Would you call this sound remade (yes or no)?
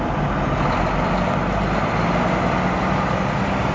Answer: no